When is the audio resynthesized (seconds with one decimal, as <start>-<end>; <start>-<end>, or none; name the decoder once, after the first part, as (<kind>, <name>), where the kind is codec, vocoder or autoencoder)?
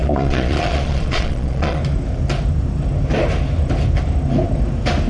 0.0-1.8 (vocoder, Vocos)